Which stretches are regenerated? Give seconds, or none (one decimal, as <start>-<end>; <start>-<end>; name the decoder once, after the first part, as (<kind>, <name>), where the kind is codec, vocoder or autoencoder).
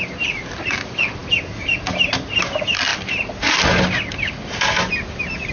none